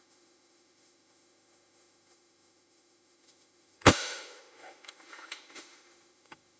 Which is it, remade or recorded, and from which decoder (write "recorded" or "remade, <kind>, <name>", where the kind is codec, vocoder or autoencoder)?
remade, autoencoder, DAC-VAE